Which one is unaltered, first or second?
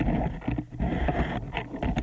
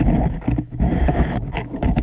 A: first